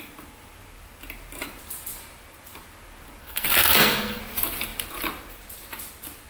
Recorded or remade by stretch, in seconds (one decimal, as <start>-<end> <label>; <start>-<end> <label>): 0.0-3.2 recorded; 3.2-4.2 remade; 4.2-6.3 recorded